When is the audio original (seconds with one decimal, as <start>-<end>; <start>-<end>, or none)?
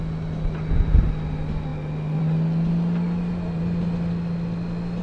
0.0-5.0